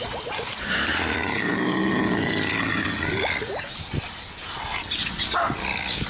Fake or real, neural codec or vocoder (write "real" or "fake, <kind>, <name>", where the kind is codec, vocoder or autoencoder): real